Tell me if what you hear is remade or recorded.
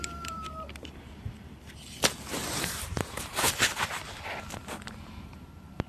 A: remade